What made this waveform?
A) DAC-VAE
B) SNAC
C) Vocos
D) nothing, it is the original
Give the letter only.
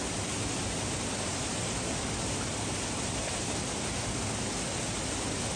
D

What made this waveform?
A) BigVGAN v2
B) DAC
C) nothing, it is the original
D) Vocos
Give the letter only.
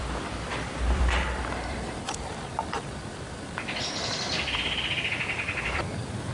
A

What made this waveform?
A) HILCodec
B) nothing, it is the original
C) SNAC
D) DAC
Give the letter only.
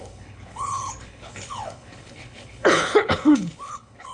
A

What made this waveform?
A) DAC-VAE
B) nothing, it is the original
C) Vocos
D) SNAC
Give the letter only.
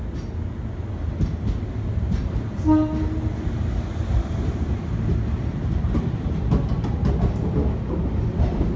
B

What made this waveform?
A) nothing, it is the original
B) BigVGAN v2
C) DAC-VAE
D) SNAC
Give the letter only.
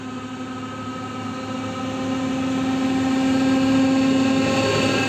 A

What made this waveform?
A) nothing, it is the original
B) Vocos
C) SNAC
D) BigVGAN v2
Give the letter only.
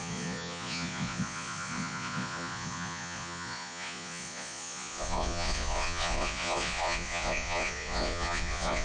B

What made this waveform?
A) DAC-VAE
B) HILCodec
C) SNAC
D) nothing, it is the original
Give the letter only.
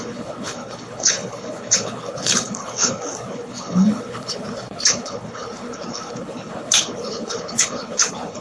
B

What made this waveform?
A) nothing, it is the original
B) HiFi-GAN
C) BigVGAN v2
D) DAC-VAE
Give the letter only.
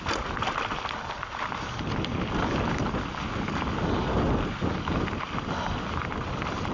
A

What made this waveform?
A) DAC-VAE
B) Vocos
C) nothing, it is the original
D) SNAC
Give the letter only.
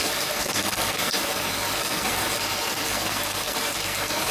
D